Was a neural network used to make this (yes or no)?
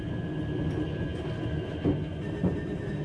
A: no